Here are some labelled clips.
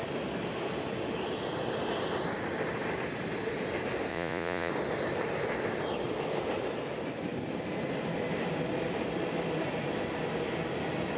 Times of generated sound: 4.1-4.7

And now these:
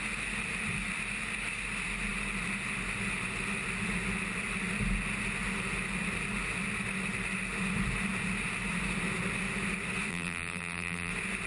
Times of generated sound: 10.1-11.1

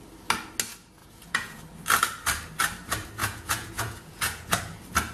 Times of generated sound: 1.0-1.6; 3.2-4.6

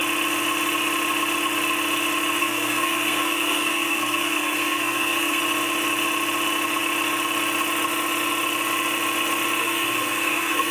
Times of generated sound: 2.4-5.4; 9.6-10.7

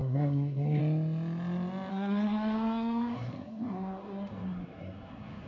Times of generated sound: 0.0-0.8; 1.9-5.5

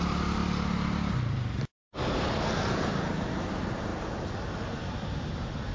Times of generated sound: none